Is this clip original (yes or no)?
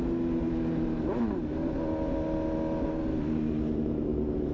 yes